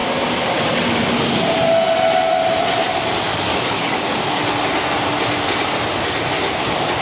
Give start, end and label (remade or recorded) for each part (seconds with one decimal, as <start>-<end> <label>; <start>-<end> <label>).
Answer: 0.0-3.3 recorded; 3.3-4.2 remade; 4.2-7.0 recorded

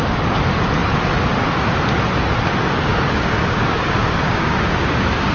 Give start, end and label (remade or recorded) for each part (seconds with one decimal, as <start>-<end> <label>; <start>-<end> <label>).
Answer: 0.0-2.9 recorded; 2.9-5.3 remade